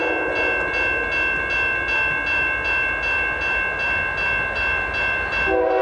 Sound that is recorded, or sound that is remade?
recorded